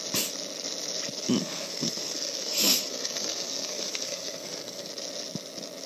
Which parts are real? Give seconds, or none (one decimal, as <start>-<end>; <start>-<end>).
0.0-1.4; 4.9-5.9